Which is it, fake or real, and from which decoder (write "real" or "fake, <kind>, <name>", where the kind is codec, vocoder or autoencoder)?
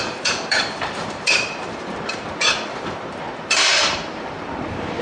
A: fake, vocoder, BigVGAN v2